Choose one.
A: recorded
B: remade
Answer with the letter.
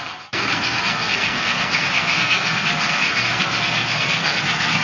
B